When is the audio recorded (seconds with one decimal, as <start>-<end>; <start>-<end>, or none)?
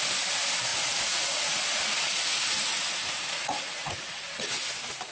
0.0-0.7; 1.7-2.3; 4.4-5.1